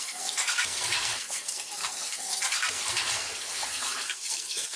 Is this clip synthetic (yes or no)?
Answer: yes